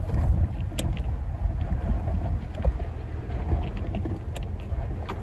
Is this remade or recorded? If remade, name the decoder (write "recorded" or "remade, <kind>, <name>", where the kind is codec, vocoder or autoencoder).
recorded